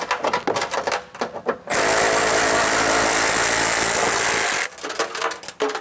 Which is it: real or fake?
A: real